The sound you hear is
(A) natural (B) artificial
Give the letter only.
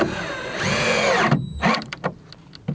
A